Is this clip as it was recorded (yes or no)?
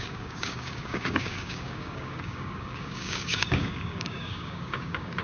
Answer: no